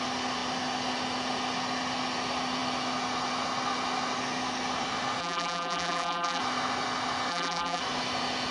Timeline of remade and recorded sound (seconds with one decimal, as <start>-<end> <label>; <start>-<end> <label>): 0.0-5.2 recorded; 5.2-6.4 remade; 6.4-7.3 recorded; 7.3-7.8 remade; 7.8-8.5 recorded